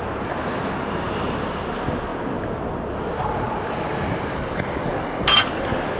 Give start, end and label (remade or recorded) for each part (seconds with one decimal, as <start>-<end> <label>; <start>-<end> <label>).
0.0-4.3 recorded; 4.3-5.6 remade; 5.6-6.0 recorded